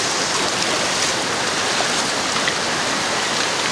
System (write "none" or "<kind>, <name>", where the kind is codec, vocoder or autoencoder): none